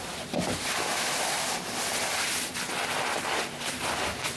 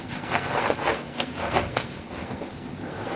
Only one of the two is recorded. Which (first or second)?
first